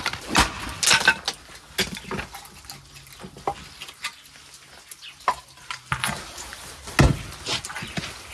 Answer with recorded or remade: recorded